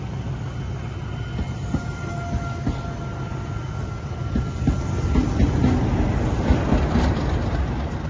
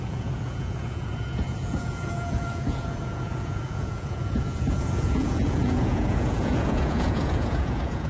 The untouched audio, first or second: first